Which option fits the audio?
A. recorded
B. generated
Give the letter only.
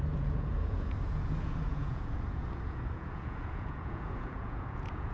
B